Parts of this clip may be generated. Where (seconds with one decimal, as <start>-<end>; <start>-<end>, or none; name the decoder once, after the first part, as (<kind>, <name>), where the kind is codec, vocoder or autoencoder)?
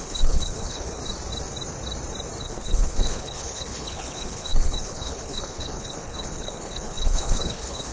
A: 0.0-1.0 (codec, HILCodec); 2.4-7.9